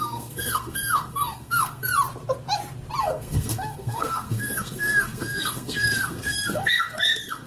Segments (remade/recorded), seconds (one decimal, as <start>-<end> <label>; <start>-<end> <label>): 0.0-1.9 remade; 1.9-3.0 recorded; 3.0-7.5 remade